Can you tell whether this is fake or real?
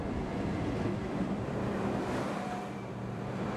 fake